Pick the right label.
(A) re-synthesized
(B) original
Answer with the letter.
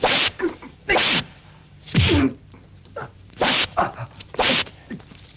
A